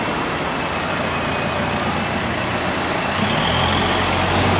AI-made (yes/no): no